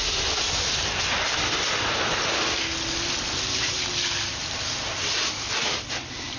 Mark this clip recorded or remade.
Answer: recorded